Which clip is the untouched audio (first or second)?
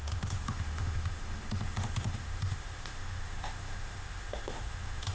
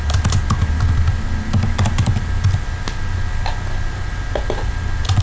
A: second